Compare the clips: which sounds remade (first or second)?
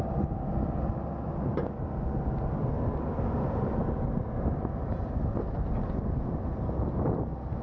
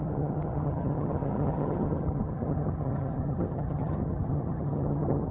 second